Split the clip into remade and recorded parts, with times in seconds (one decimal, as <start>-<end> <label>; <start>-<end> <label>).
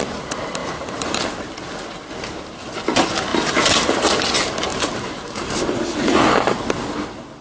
0.0-0.6 recorded; 0.6-1.2 remade; 1.2-3.3 recorded; 3.3-3.9 remade; 3.9-4.7 recorded; 4.7-6.6 remade; 6.6-7.4 recorded